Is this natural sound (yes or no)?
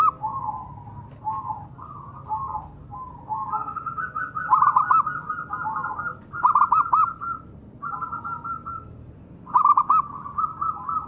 yes